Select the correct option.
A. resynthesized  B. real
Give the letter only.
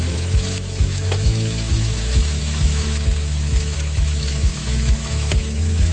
A